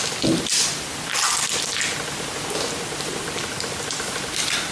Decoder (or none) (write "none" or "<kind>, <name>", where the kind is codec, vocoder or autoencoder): none